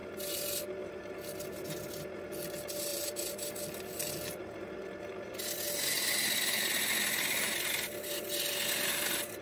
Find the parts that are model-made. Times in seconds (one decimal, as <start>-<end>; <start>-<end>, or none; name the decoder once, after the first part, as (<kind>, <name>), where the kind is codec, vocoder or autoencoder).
2.9-3.5 (vocoder, BigVGAN v2)